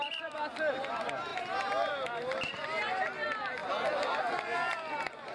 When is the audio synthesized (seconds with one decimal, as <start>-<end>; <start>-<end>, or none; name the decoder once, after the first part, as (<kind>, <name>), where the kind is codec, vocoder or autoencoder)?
none